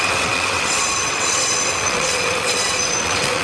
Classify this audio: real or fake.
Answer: fake